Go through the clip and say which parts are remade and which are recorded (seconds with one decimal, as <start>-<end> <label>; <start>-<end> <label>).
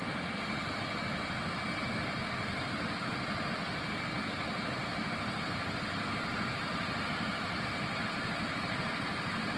0.0-9.6 recorded